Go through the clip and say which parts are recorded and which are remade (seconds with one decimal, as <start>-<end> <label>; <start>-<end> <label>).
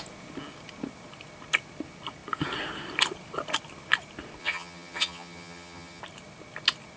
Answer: 0.0-4.4 recorded; 4.4-6.0 remade; 6.0-7.0 recorded